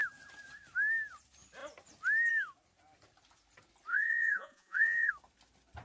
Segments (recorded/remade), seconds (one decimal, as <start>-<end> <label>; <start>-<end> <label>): 0.0-3.9 recorded; 3.9-5.1 remade; 5.1-5.8 recorded